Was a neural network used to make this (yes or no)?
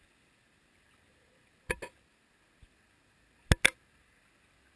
no